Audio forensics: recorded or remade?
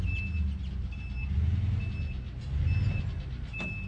recorded